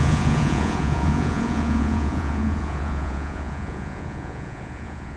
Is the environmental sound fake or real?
fake